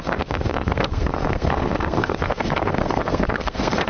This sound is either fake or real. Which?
fake